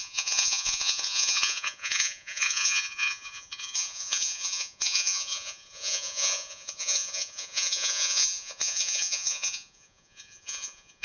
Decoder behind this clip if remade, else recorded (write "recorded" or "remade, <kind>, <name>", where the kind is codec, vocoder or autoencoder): remade, vocoder, Vocos